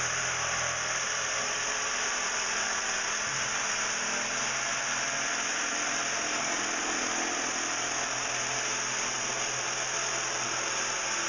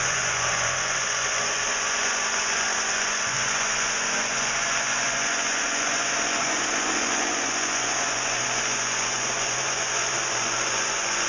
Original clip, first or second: first